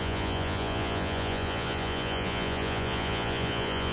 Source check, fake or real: fake